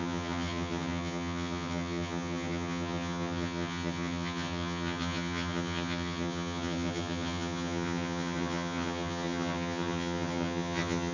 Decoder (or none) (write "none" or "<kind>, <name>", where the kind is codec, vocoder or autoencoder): vocoder, HiFi-GAN